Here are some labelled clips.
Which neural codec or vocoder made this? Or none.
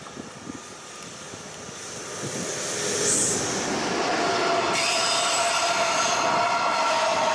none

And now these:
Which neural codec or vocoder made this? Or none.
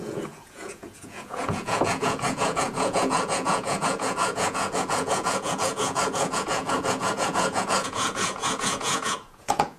vocoder, Vocos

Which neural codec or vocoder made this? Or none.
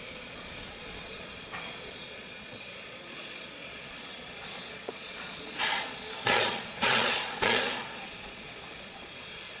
vocoder, Vocos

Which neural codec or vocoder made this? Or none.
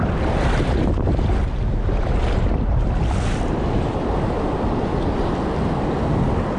none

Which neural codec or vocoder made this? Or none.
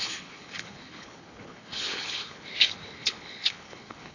codec, HILCodec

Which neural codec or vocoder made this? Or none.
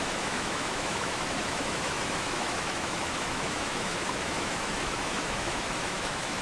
autoencoder, DAC-VAE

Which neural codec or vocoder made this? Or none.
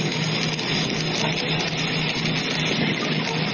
none